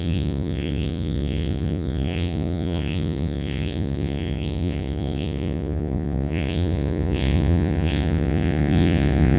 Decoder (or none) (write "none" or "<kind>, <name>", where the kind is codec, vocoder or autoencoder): vocoder, Vocos